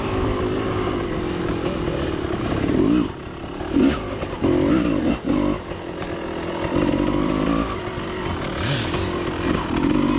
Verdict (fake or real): real